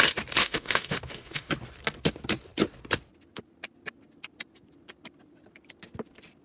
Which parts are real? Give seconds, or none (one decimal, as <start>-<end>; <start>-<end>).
0.0-0.4; 1.5-6.4